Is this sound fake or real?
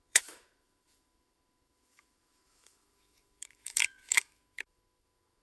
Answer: fake